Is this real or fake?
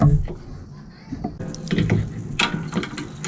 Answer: real